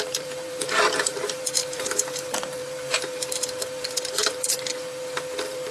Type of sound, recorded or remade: remade